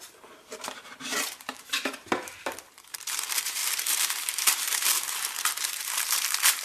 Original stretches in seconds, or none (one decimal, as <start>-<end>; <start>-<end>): none